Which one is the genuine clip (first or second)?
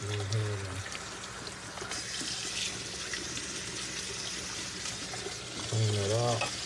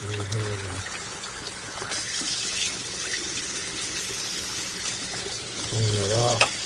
first